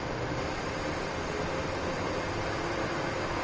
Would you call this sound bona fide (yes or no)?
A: yes